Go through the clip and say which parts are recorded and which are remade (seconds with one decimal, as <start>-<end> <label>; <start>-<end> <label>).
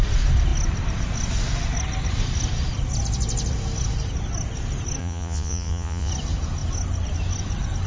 0.0-5.0 recorded; 5.0-6.1 remade; 6.1-7.9 recorded